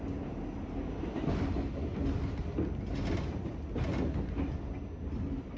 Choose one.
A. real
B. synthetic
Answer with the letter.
A